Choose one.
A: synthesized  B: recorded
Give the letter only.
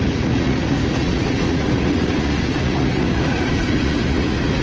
A